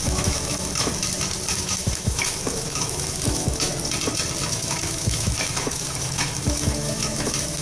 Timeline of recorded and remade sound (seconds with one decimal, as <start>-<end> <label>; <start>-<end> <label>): 0.0-0.9 remade; 0.9-1.5 recorded; 1.5-3.7 remade; 3.7-4.4 recorded; 4.4-7.6 remade